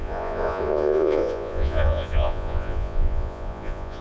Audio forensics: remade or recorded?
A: remade